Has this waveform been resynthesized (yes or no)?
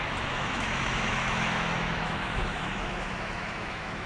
yes